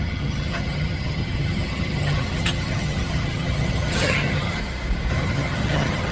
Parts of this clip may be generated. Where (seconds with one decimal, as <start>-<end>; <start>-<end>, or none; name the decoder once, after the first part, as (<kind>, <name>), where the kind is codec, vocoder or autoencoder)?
0.0-4.6 (vocoder, HiFi-GAN); 5.1-6.1